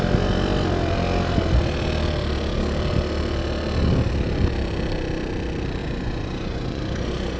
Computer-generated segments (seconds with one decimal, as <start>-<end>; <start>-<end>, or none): 5.8-7.4